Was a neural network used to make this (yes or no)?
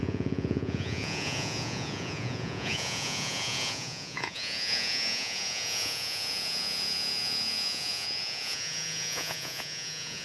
yes